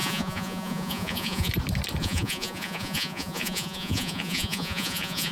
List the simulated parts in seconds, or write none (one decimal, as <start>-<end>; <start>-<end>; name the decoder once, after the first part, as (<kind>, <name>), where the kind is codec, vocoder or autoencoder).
0.0-1.5 (vocoder, Vocos); 2.0-5.3